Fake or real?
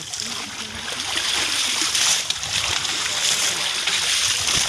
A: real